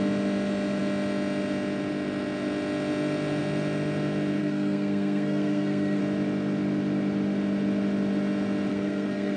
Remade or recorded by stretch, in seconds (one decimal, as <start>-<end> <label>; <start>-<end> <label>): 0.0-4.4 recorded; 4.4-6.0 remade; 6.0-8.7 recorded; 8.7-9.4 remade